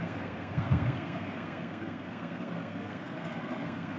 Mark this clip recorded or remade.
remade